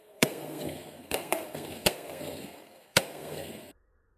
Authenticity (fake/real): fake